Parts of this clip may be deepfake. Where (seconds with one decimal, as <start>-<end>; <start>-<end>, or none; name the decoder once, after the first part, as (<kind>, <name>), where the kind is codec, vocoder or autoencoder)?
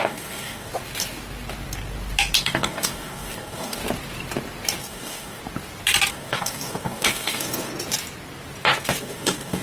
0.0-0.7 (codec, DAC); 2.4-3.8; 4.8-5.4; 6.1-7.7; 9.0-9.6